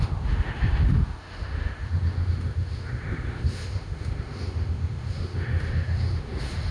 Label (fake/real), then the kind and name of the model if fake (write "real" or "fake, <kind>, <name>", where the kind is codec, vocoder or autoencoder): fake, autoencoder, DAC-VAE